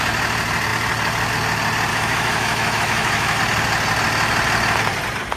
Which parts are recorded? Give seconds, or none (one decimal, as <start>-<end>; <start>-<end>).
0.0-1.9; 3.4-5.4